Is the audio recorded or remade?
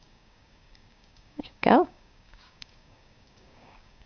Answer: remade